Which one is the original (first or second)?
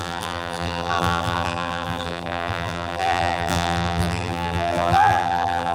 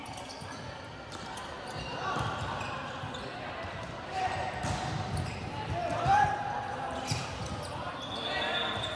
second